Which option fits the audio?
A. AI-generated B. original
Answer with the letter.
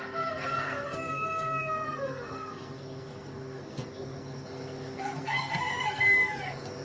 A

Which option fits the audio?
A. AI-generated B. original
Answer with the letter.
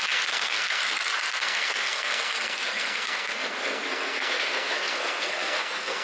A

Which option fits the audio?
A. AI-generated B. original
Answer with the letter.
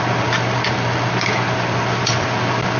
B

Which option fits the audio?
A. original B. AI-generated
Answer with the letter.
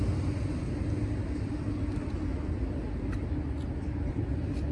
A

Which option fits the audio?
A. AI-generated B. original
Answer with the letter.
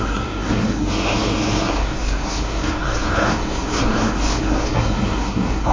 A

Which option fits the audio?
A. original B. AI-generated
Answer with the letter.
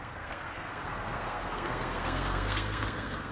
B